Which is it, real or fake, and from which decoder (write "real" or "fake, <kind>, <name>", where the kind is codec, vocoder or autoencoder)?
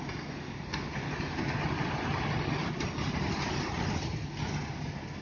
real